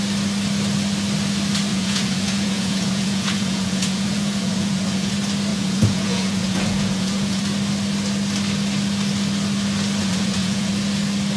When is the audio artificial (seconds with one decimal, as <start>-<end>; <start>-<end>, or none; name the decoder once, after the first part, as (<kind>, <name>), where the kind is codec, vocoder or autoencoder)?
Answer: 1.7-5.1 (vocoder, Vocos); 5.5-7.4; 10.0-10.7